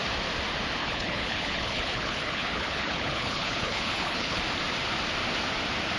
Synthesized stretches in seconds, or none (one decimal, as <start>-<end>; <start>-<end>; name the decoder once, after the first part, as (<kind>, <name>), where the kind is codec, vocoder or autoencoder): 0.8-4.4 (codec, HILCodec)